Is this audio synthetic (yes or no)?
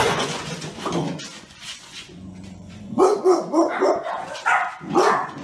yes